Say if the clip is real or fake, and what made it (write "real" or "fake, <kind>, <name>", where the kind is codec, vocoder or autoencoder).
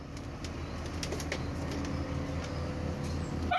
real